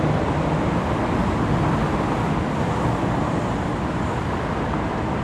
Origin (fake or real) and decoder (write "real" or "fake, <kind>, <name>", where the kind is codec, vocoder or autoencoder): real